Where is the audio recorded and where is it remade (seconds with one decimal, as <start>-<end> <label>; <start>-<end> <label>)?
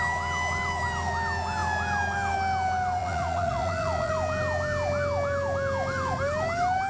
0.0-3.0 recorded; 3.0-4.1 remade; 4.1-6.9 recorded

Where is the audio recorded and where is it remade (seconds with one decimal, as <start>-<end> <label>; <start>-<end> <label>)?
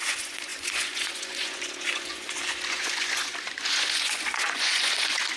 0.0-5.4 remade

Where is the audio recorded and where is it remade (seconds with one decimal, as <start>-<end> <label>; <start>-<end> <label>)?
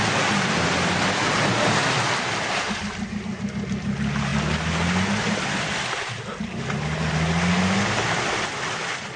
0.0-9.2 recorded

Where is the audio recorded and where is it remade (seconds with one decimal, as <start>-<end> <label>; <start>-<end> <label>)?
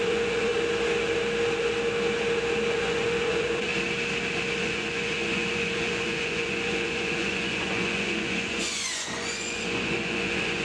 0.0-0.5 remade; 0.5-2.7 recorded; 2.7-3.7 remade; 3.7-4.6 recorded; 4.6-10.6 remade